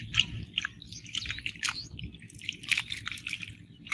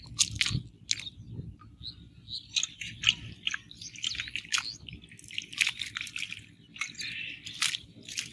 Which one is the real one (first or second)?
second